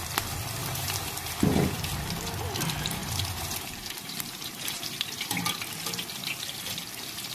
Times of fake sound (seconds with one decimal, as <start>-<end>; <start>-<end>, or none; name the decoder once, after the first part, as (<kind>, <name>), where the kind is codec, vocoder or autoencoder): 0.6-1.1 (vocoder, BigVGAN v2); 3.0-5.4